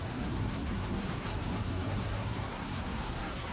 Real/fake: fake